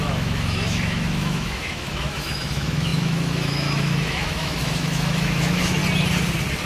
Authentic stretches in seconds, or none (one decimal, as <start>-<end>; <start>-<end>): 5.8-6.7